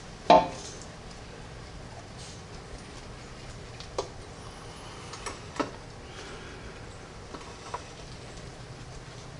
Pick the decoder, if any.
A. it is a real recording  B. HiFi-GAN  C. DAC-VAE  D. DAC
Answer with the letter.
A